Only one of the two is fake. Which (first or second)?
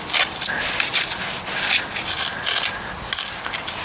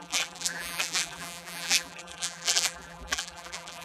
second